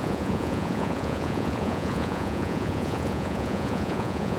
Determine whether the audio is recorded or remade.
remade